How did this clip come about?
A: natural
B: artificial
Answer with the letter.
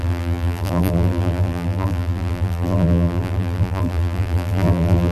B